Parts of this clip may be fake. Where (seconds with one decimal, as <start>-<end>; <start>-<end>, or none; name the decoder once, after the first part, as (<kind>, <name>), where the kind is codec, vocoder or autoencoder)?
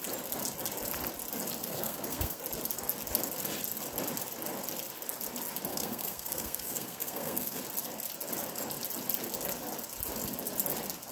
1.6-2.4 (codec, SNAC); 5.7-7.6